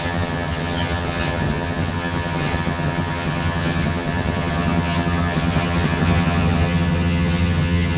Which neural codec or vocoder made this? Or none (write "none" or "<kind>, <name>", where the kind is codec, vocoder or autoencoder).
vocoder, HiFi-GAN